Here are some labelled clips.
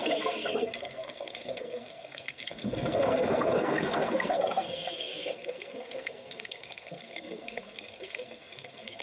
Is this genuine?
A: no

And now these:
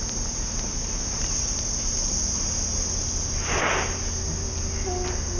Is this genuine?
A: yes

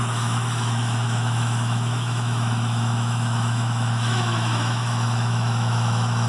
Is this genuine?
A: no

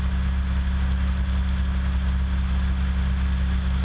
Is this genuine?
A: yes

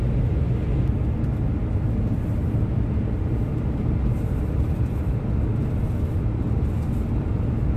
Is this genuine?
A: yes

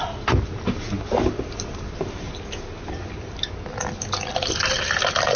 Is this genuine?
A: yes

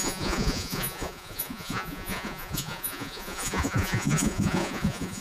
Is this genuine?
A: no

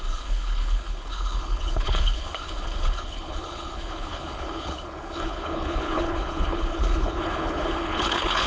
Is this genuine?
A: no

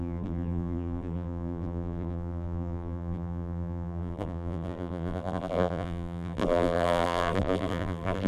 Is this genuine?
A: no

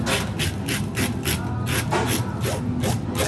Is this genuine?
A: yes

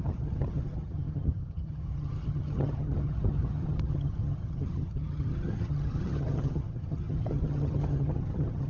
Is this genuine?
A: no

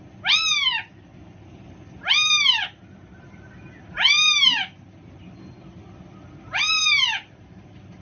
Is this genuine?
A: yes